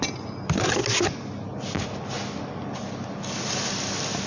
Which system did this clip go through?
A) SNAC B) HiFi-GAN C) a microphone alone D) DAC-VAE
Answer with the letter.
C